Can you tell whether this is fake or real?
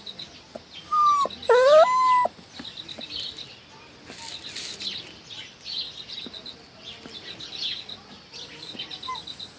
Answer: real